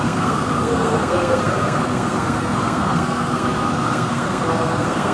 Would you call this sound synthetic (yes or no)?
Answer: yes